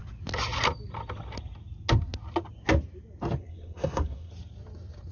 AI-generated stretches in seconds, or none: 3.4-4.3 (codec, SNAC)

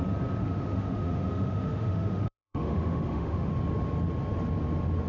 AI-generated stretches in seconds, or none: 0.4-3.5 (autoencoder, DAC-VAE)

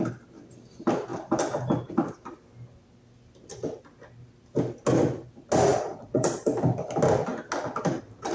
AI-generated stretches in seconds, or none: 5.7-6.4 (vocoder, Vocos)

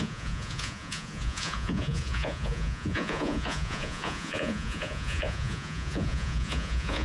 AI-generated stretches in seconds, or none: 0.0-7.0 (vocoder, Vocos)

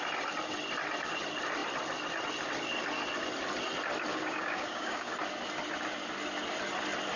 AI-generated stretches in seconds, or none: 4.1-5.1 (codec, DAC)